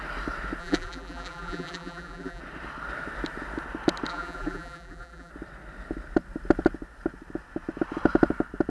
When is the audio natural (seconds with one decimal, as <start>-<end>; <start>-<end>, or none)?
0.0-0.6; 2.4-4.1; 5.3-8.7

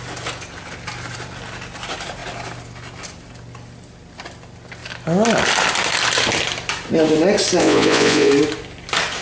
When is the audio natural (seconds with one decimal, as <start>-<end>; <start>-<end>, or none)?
0.0-7.6; 8.3-9.2

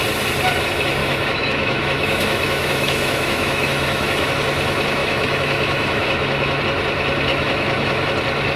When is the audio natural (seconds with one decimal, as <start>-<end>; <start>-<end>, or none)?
0.0-1.0; 4.3-5.0; 6.6-7.3; 8.1-8.6

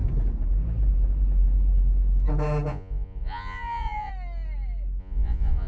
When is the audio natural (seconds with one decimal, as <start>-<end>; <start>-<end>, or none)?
0.0-2.7; 4.1-5.0

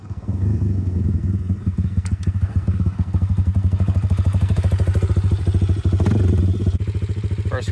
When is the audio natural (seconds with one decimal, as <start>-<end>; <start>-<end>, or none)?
4.6-7.7

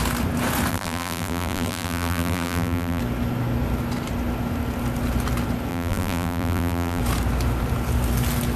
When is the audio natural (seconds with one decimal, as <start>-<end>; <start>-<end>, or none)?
0.0-0.7; 3.0-5.7; 7.0-8.6